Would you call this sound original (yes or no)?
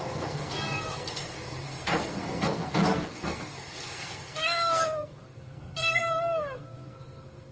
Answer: no